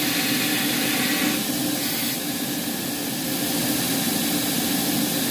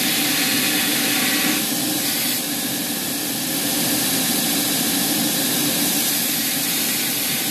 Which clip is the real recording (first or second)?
first